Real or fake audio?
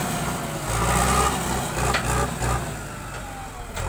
real